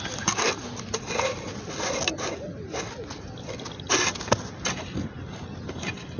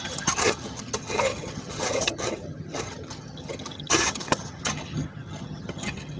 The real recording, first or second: first